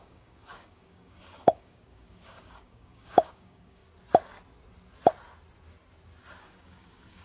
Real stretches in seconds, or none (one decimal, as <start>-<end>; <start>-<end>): 3.8-6.4